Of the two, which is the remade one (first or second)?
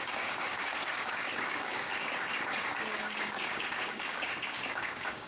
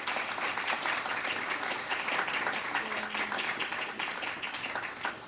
first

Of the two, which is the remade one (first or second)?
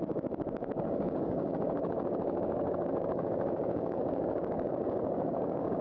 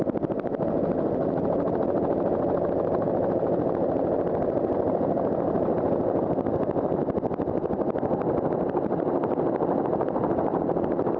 first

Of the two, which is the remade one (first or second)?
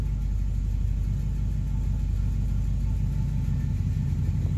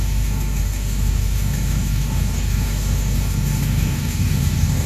second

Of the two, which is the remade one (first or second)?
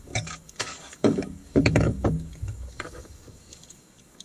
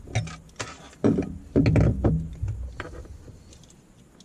first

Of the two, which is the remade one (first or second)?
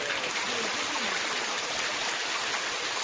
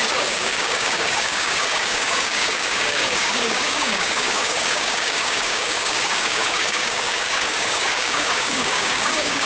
second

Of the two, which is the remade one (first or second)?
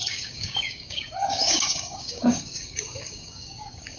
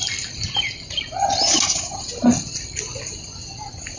first